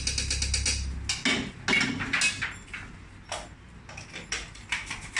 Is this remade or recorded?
recorded